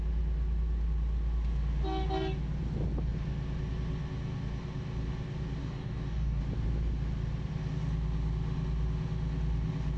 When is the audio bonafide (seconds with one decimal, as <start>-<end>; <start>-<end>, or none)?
0.0-5.6; 6.4-10.0